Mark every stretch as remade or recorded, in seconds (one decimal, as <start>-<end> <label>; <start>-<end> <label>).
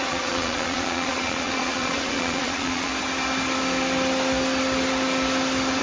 0.0-2.9 remade; 2.9-5.8 recorded